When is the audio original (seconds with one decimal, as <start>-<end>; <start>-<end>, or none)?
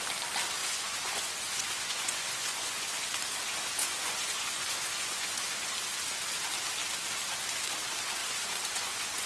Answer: 0.0-0.6; 3.0-3.8; 5.7-8.2